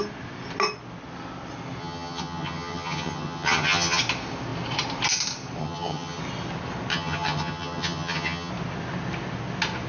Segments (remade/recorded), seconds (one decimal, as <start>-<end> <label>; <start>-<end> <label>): 0.0-1.8 recorded; 1.8-4.0 remade; 4.0-5.6 recorded; 5.6-6.2 remade; 6.2-6.9 recorded; 6.9-8.5 remade; 8.5-9.9 recorded